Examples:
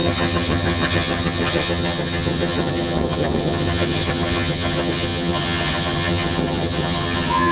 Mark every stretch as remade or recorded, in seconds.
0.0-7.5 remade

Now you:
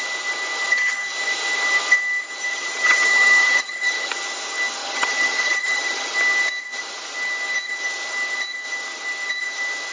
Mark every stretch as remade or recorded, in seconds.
0.0-2.5 recorded; 2.5-4.1 remade; 4.1-4.8 recorded; 4.8-6.1 remade; 6.1-9.9 recorded

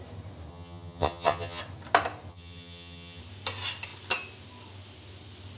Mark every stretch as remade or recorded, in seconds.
0.0-0.5 recorded; 0.5-1.6 remade; 1.6-2.3 recorded; 2.3-3.2 remade; 3.2-5.6 recorded